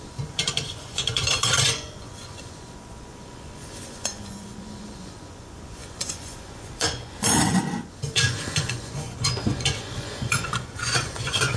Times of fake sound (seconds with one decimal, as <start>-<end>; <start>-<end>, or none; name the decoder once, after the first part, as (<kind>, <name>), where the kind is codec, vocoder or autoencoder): 0.0-11.6 (vocoder, Vocos)